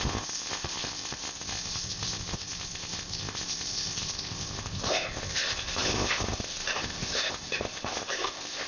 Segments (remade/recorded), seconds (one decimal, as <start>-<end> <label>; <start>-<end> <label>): 0.0-8.7 remade